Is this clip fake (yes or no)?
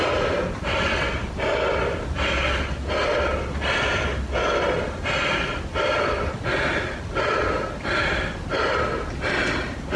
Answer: no